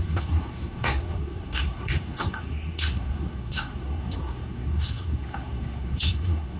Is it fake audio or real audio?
fake